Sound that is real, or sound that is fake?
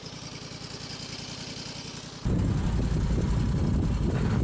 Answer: real